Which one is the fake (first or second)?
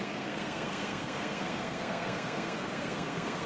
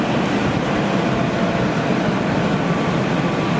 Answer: first